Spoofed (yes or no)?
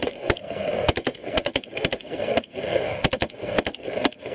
yes